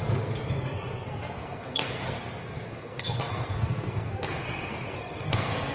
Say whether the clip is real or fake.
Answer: fake